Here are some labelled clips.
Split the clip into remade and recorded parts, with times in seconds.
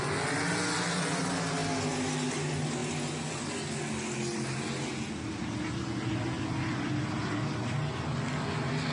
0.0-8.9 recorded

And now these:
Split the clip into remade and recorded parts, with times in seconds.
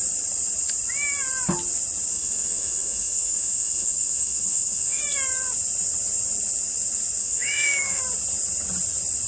0.0-2.1 recorded; 2.1-5.0 remade; 5.0-7.2 recorded; 7.2-8.0 remade; 8.0-9.3 recorded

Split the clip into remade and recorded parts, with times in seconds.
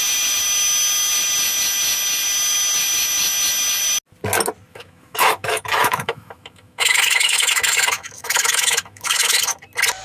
0.0-4.7 recorded; 4.7-9.4 remade; 9.4-10.0 recorded